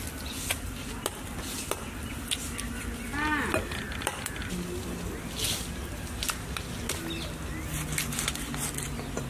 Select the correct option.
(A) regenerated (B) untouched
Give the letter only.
B